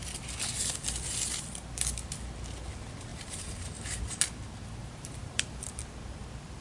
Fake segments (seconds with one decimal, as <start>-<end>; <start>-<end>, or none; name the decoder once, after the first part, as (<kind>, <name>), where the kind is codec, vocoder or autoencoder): 3.1-4.0 (vocoder, BigVGAN v2); 4.8-5.8